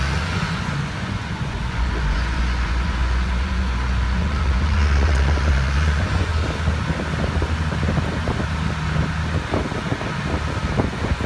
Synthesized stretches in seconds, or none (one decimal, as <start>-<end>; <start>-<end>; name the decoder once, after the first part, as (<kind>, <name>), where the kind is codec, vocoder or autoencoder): 0.0-6.3 (vocoder, Vocos); 10.8-11.3